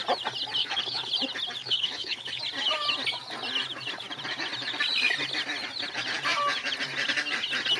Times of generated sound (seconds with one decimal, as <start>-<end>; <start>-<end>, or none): 0.6-1.1; 1.6-2.4